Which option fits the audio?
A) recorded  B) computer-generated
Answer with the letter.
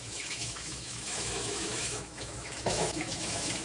B